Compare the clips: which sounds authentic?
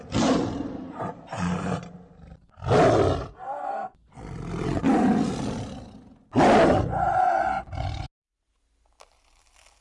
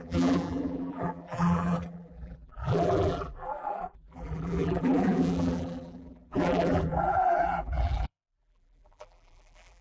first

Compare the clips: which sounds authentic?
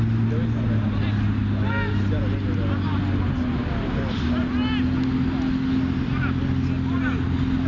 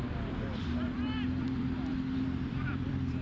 first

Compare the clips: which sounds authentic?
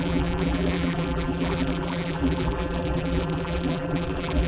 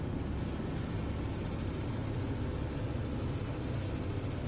second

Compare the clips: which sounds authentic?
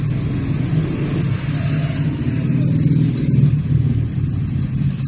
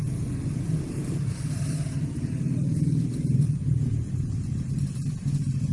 first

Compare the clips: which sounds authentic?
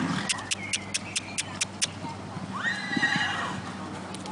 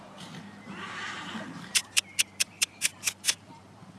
first